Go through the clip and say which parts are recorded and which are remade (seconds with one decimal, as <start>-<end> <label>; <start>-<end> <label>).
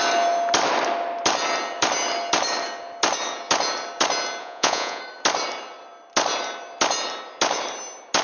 0.0-4.4 recorded; 4.4-5.0 remade; 5.0-8.2 recorded